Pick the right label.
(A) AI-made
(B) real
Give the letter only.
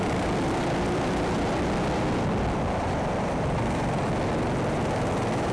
B